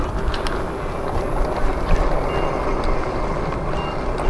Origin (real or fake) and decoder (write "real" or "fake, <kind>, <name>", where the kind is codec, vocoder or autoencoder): real